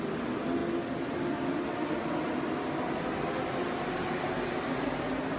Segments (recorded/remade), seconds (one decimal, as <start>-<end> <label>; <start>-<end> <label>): 0.0-5.4 recorded

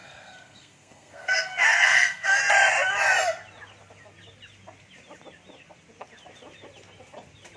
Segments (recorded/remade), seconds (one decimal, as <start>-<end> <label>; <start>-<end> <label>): 0.0-2.4 remade; 2.4-7.6 recorded

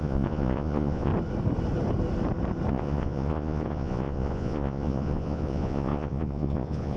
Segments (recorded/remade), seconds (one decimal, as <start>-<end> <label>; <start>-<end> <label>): 0.0-1.1 remade; 1.1-2.7 recorded; 2.7-7.0 remade

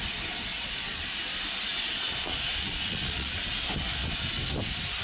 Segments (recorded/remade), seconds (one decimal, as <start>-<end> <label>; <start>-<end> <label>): 0.0-0.5 recorded; 0.5-1.0 remade; 1.0-1.7 recorded; 1.7-3.5 remade; 3.5-5.0 recorded

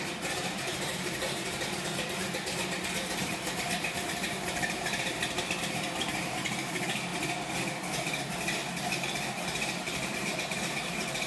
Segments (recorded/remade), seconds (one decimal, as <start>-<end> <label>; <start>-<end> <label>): 0.0-7.1 remade; 7.1-8.7 recorded; 8.7-11.3 remade

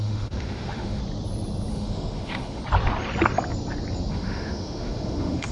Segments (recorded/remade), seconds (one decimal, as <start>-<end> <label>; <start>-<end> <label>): 0.0-1.0 remade; 1.0-1.7 recorded; 1.7-2.6 remade; 2.6-4.1 recorded; 4.1-5.5 remade